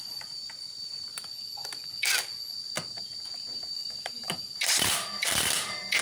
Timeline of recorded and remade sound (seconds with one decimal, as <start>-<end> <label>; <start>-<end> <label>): 0.0-1.1 remade; 1.1-2.9 recorded; 2.9-6.0 remade